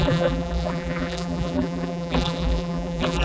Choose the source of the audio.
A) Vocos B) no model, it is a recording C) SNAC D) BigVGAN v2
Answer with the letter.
D